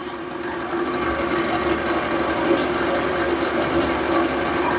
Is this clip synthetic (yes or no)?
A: no